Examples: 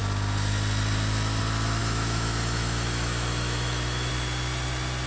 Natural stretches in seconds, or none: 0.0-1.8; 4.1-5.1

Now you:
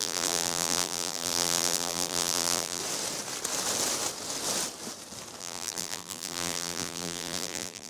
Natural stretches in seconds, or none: 2.8-5.4